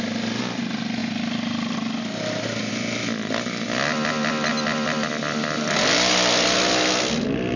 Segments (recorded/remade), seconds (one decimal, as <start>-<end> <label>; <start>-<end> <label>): 0.0-7.6 recorded

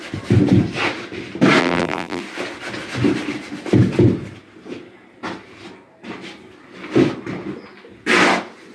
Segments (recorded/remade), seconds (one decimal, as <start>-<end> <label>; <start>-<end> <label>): 0.0-1.6 recorded; 1.6-2.2 remade; 2.2-8.7 recorded

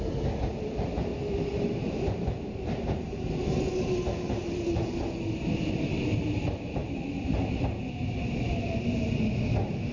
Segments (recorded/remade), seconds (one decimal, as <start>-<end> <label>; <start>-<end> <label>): 0.0-1.1 recorded; 1.1-3.3 remade; 3.3-5.9 recorded; 5.9-9.1 remade; 9.1-9.9 recorded

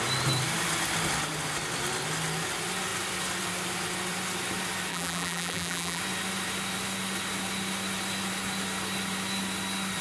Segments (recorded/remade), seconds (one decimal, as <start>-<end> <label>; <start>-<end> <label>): 0.0-4.9 recorded; 4.9-6.0 remade; 6.0-10.0 recorded

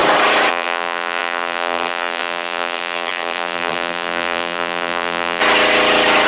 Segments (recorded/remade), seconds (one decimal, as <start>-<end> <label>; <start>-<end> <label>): 0.0-0.5 recorded; 0.5-5.4 remade; 5.4-6.3 recorded

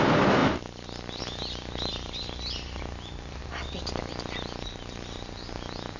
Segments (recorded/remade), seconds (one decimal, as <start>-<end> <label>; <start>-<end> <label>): 0.0-0.4 recorded; 0.4-1.2 remade; 1.2-1.9 recorded; 1.9-2.8 remade; 2.8-6.0 recorded

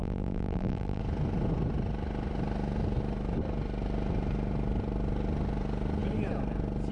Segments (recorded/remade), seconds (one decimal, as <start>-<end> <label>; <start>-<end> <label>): 0.0-1.0 remade; 1.0-6.9 recorded